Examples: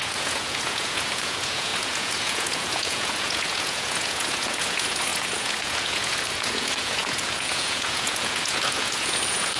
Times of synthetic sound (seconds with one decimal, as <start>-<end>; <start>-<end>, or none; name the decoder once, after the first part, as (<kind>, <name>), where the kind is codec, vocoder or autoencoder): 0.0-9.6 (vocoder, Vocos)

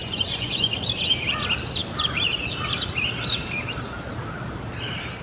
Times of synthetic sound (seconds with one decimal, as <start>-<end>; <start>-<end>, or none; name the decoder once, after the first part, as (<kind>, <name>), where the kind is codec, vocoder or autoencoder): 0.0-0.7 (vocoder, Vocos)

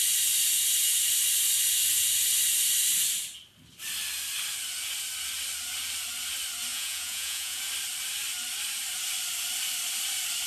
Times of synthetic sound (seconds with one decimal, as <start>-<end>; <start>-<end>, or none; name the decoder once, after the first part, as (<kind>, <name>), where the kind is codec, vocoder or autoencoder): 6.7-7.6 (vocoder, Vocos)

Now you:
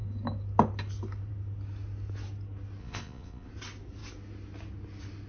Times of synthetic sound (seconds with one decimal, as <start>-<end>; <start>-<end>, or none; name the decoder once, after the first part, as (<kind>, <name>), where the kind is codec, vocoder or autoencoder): 2.8-3.5 (vocoder, Vocos)